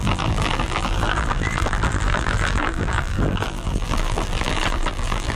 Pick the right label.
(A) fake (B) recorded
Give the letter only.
A